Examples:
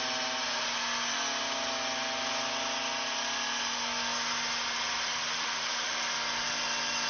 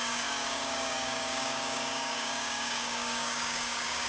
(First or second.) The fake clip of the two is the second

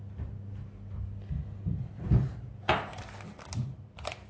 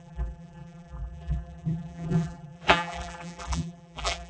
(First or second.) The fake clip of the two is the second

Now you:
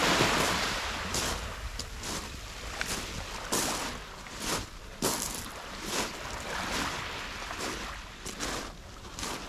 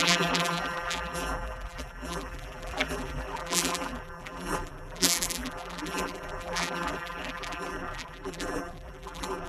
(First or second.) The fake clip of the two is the second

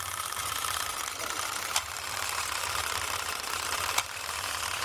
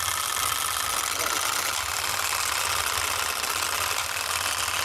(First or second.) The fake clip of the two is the first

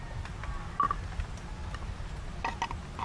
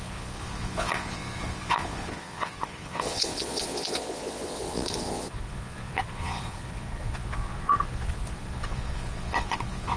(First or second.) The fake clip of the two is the second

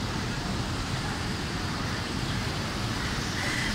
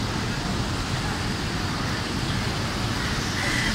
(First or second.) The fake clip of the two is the first